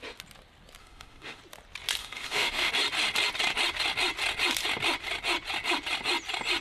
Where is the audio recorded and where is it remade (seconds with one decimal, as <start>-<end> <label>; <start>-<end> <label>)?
0.0-0.8 recorded; 0.8-1.4 remade; 1.4-2.0 recorded; 2.0-2.7 remade; 2.7-6.6 recorded